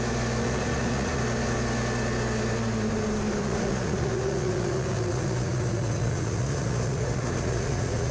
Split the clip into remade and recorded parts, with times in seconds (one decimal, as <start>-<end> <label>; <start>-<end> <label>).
0.0-0.4 recorded; 0.4-1.2 remade; 1.2-3.4 recorded; 3.4-8.1 remade